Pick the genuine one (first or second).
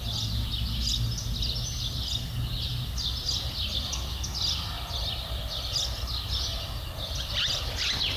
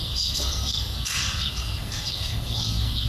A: first